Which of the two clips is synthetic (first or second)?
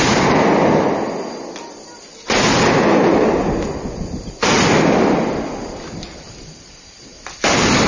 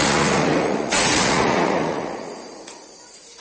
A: second